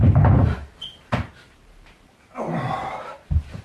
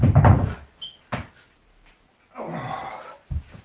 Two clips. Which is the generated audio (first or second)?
first